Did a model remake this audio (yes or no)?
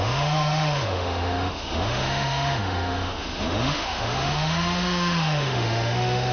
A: yes